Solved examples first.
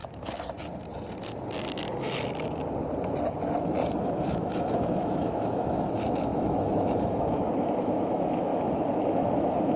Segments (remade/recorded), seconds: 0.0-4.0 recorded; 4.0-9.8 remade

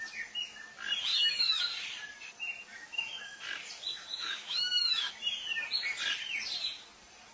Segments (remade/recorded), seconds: 0.0-1.1 recorded; 1.1-1.6 remade; 1.6-2.7 recorded; 2.7-3.4 remade; 3.4-3.9 recorded; 3.9-5.1 remade; 5.1-7.3 recorded